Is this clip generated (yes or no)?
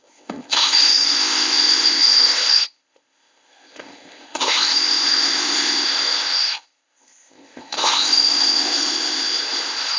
yes